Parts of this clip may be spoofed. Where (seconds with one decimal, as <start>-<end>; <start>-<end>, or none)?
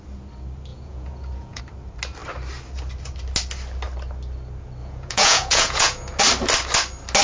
0.7-1.6; 4.8-6.2